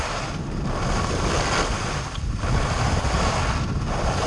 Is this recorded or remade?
recorded